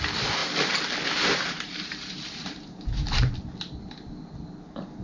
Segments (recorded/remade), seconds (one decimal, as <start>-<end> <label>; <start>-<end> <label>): 0.0-0.4 recorded; 0.4-3.4 remade; 3.4-5.0 recorded

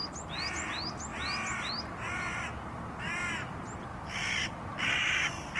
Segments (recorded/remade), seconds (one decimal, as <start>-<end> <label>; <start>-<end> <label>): 0.0-5.6 recorded

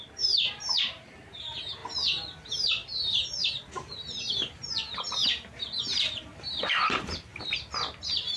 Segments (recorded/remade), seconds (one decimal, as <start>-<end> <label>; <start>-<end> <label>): 0.0-1.8 remade; 1.8-4.7 recorded; 4.7-5.2 remade; 5.2-5.7 recorded; 5.7-7.3 remade; 7.3-8.0 recorded; 8.0-8.4 remade

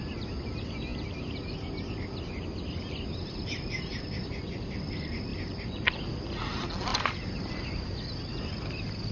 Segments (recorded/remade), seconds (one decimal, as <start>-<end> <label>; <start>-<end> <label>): 0.0-5.3 recorded; 5.3-6.2 remade; 6.2-9.1 recorded

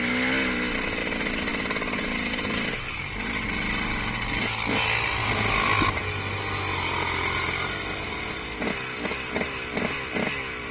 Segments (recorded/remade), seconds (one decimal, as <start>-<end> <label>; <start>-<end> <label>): 0.0-10.7 recorded

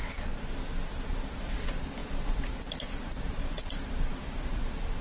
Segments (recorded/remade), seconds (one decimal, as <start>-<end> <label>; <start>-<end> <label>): 0.0-1.1 recorded; 1.1-5.0 remade

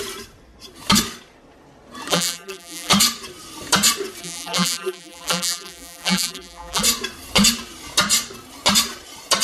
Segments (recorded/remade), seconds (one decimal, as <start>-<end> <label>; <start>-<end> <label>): 0.0-2.1 recorded; 2.1-2.9 remade; 2.9-4.2 recorded; 4.2-6.8 remade; 6.8-9.4 recorded

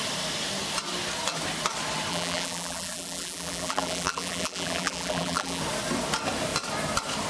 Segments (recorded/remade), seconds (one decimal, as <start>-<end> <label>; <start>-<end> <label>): 0.0-2.1 recorded; 2.1-5.6 remade; 5.6-7.3 recorded